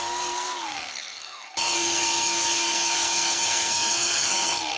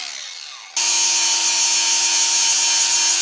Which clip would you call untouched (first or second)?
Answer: second